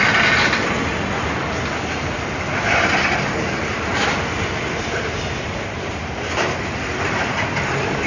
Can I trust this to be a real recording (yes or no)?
yes